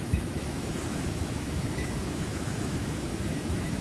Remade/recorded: remade